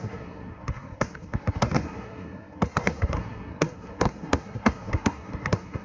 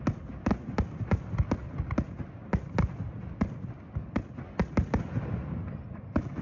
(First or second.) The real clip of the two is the second